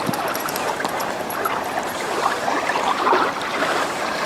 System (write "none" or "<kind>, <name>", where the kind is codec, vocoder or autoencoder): vocoder, BigVGAN v2